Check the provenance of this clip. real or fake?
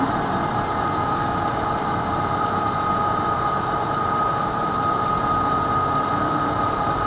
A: fake